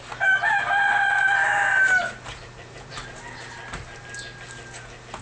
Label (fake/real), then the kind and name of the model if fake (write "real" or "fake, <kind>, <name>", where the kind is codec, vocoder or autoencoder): real